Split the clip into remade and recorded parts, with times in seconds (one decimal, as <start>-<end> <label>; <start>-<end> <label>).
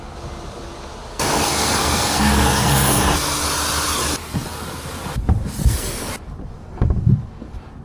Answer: 0.0-1.1 recorded; 1.1-3.0 remade; 3.0-5.6 recorded; 5.6-6.1 remade; 6.1-7.8 recorded